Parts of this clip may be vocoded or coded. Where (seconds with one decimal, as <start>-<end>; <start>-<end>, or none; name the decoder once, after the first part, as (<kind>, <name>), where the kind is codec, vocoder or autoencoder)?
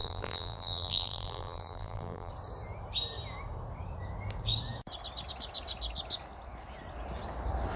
0.0-2.3 (vocoder, BigVGAN v2)